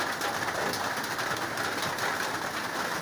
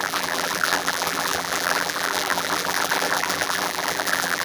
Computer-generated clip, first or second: second